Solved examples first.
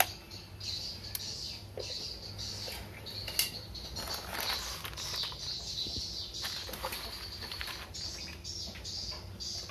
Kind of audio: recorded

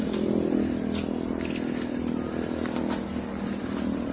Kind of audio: recorded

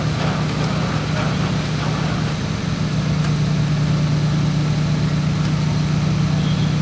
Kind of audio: recorded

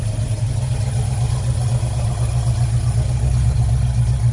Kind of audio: recorded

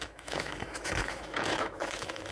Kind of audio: remade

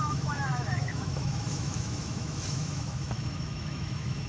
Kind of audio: remade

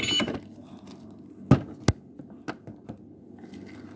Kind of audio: recorded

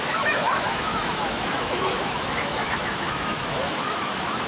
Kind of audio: remade